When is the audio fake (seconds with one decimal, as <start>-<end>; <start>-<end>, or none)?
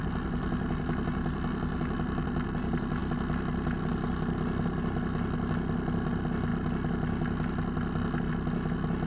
none